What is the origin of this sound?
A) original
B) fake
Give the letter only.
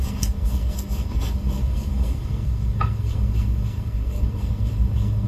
B